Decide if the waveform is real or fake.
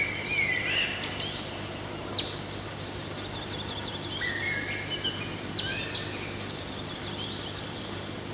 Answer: real